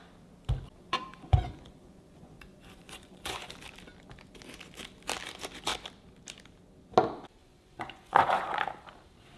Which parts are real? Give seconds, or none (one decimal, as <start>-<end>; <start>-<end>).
0.0-0.8; 3.5-7.4; 8.6-9.4